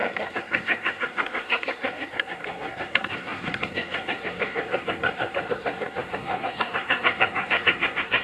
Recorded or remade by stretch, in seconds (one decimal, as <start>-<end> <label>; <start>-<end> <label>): 0.0-8.2 remade